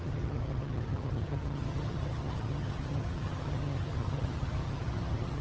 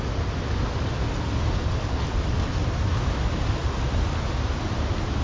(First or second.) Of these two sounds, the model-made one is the first